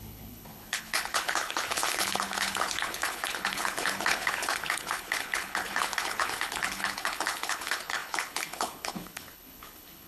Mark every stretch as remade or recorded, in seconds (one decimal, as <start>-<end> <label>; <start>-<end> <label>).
0.0-10.1 remade